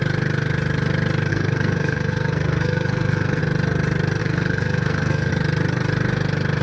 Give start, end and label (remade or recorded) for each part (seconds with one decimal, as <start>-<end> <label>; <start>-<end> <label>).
0.0-1.3 recorded; 1.3-3.4 remade; 3.4-4.2 recorded; 4.2-5.3 remade; 5.3-6.6 recorded